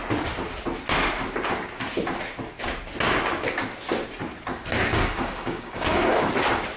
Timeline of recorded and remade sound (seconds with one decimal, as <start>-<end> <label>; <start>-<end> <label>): 0.0-4.9 recorded; 4.9-6.3 remade; 6.3-6.8 recorded